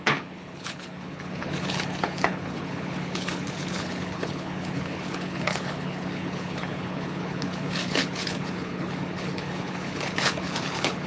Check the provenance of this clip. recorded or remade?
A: remade